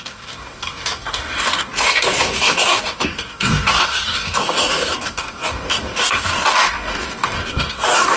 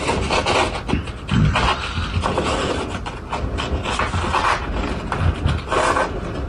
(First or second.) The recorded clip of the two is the second